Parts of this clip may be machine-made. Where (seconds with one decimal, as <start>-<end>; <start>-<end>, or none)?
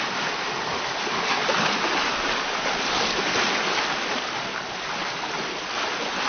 none